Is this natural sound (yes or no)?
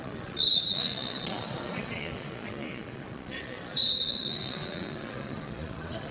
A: no